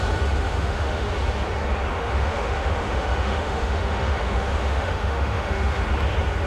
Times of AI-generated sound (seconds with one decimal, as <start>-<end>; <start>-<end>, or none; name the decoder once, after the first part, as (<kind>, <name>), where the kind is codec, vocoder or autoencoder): 0.4-1.1 (autoencoder, DAC-VAE); 1.9-5.8